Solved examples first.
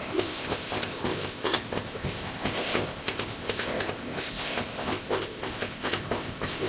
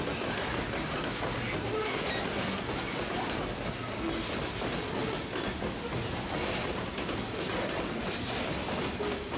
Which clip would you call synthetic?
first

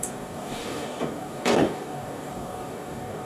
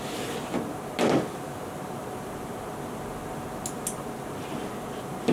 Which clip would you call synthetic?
first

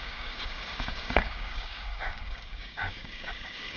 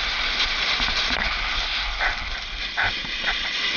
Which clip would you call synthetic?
first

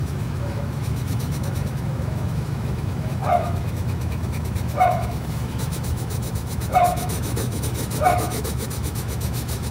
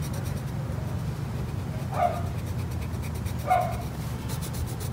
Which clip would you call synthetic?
first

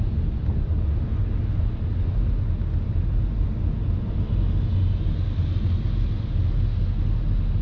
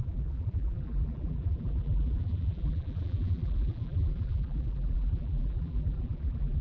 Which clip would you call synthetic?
second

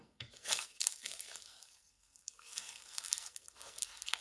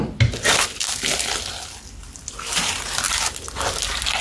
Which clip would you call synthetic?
first